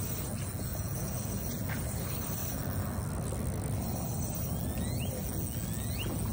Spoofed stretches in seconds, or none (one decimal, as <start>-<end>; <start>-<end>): 0.7-1.2